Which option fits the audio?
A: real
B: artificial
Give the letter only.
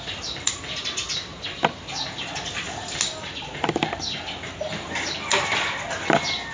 A